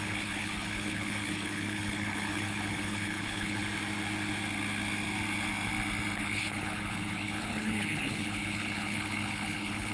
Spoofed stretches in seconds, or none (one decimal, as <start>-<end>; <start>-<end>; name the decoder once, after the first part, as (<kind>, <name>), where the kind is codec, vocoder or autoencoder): 0.0-3.6 (codec, HILCodec); 6.2-9.9

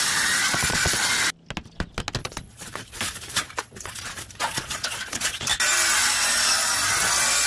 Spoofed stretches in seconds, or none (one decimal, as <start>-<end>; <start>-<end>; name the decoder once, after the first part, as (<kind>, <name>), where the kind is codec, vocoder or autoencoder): 0.4-0.9 (vocoder, Vocos); 2.2-5.4

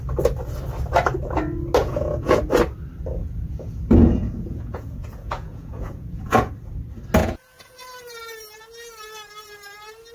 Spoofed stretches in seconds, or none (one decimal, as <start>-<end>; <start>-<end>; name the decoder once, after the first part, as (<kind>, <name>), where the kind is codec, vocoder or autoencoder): 1.8-2.4 (vocoder, Vocos); 3.2-6.5; 7.2-7.8

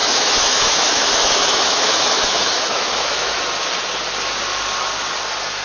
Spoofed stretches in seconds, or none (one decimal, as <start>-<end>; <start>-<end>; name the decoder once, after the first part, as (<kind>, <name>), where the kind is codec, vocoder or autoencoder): 0.0-3.4 (autoencoder, DAC-VAE)

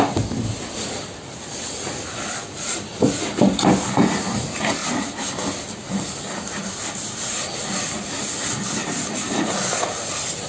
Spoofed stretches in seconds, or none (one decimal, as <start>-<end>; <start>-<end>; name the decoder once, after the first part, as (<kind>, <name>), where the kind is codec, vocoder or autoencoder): none

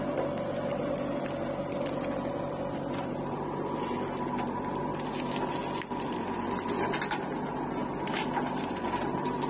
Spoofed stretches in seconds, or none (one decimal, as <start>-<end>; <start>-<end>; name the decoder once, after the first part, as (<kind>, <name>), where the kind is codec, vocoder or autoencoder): none

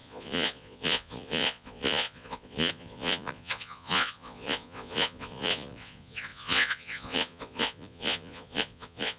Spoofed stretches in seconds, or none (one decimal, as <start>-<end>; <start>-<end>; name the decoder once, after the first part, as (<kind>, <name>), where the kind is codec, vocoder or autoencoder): 0.0-9.2 (vocoder, Vocos)

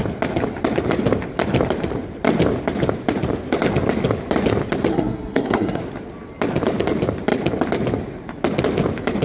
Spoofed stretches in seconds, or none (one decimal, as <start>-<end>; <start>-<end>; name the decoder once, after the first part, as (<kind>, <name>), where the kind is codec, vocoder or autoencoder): 4.9-5.8 (codec, SNAC)